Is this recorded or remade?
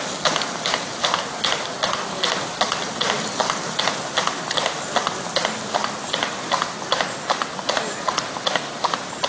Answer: recorded